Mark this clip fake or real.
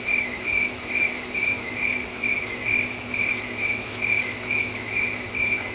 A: fake